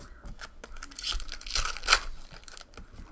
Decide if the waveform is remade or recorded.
recorded